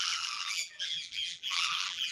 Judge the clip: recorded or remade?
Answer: remade